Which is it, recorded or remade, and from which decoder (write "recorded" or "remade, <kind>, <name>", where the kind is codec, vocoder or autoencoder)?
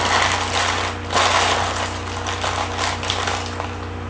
recorded